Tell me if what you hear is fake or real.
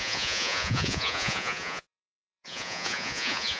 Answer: fake